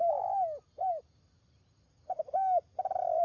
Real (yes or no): yes